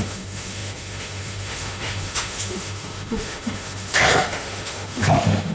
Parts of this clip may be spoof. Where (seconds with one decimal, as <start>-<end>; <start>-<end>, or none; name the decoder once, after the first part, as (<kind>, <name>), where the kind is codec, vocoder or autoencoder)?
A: 0.0-5.5 (autoencoder, DAC-VAE)